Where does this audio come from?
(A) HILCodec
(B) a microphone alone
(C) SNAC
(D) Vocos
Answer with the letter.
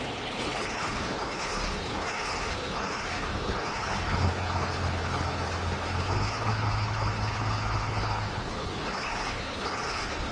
A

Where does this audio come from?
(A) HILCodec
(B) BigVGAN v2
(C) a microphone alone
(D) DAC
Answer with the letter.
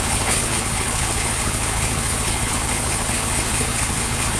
A